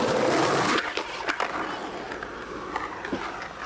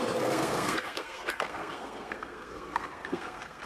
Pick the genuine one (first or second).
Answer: first